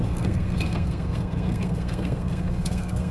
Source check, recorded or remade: remade